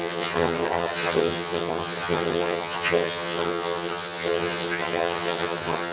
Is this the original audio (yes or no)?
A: no